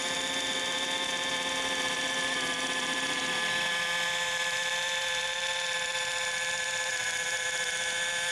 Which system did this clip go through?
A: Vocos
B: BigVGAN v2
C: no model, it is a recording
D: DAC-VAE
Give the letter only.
B